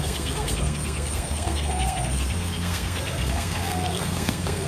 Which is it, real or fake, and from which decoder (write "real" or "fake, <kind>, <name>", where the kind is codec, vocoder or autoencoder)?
fake, codec, SNAC